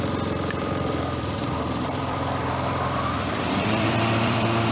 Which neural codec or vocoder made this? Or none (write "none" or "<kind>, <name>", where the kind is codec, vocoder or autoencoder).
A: vocoder, BigVGAN v2